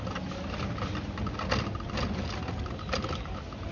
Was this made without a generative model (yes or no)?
yes